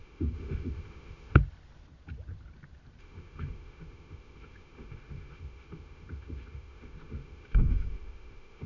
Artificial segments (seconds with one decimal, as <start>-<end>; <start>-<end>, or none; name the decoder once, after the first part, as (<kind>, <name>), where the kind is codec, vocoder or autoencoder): 0.0-1.4 (autoencoder, DAC-VAE); 3.0-8.7